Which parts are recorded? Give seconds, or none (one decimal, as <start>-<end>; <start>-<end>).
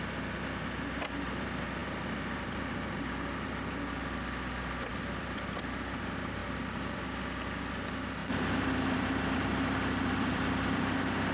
0.0-4.9; 5.4-6.4; 7.0-8.2; 10.4-11.3